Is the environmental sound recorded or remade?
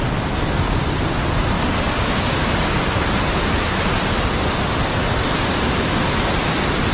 remade